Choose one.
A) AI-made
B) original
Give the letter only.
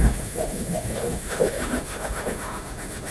A